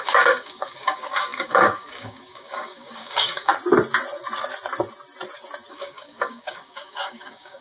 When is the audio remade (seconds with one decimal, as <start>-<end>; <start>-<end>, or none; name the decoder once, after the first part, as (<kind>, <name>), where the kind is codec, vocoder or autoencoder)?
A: 0.0-3.5 (codec, DAC); 5.7-7.6